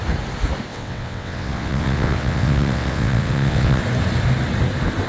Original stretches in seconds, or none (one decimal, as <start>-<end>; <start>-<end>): 0.0-0.7; 3.8-5.1

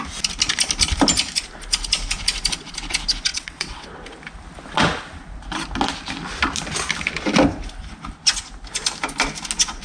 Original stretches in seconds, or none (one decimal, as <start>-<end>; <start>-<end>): 0.0-3.3; 3.9-9.8